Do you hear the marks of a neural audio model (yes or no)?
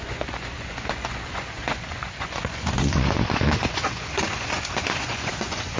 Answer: yes